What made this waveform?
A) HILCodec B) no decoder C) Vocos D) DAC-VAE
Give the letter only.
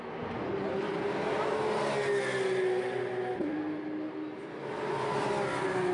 B